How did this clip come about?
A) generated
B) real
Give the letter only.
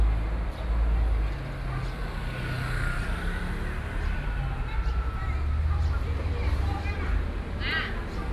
B